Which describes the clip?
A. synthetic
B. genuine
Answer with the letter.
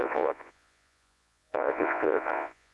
A